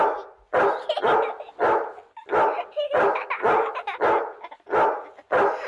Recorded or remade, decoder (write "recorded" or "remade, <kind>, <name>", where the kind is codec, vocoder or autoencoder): recorded